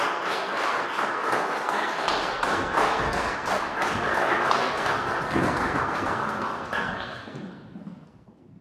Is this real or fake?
fake